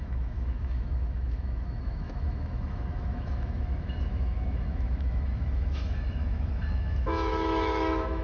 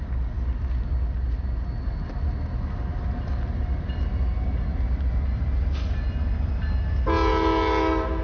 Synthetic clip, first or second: first